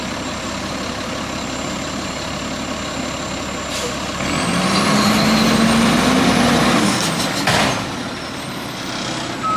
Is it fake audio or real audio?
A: real